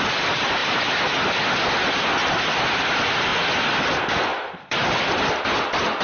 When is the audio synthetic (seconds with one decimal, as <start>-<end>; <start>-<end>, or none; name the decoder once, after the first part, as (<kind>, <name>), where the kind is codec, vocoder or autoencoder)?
0.0-0.6 (vocoder, BigVGAN v2); 2.4-3.3; 3.8-6.0